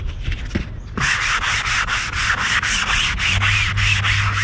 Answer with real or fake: real